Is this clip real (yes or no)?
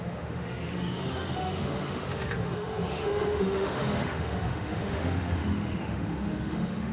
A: no